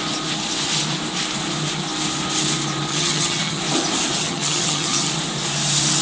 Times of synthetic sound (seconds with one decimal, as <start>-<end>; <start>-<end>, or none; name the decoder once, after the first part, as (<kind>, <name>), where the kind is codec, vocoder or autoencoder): 2.9-3.6 (vocoder, HiFi-GAN); 4.2-5.1